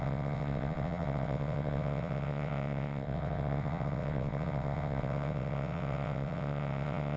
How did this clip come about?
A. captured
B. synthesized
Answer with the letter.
B